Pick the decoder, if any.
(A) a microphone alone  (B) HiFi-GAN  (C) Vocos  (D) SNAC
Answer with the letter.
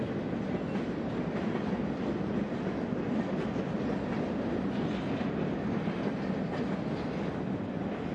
A